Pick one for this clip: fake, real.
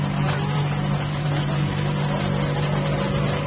real